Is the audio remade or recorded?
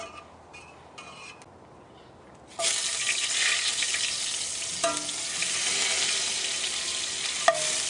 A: recorded